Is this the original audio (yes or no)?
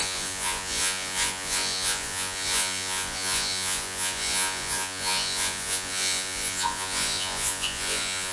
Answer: no